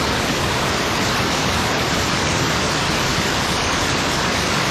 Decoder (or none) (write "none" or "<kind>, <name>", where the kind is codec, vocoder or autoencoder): codec, DAC